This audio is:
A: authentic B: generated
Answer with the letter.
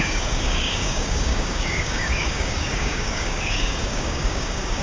B